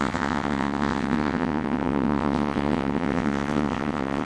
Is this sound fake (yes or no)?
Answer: yes